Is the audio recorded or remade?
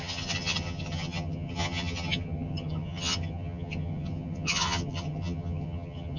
remade